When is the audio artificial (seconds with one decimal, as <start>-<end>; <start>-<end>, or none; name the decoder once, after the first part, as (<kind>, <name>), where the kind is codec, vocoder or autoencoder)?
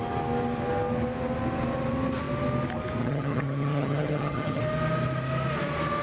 3.0-4.6 (vocoder, HiFi-GAN)